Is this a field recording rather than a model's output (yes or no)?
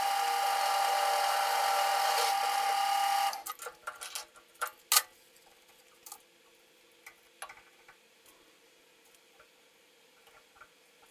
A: yes